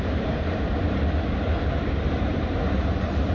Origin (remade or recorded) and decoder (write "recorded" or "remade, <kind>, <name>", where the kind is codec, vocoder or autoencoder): remade, vocoder, BigVGAN v2